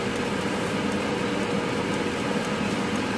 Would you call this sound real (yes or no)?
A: yes